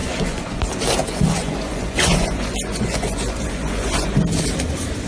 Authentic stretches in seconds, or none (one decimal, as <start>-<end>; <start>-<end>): 0.6-1.0; 4.1-5.1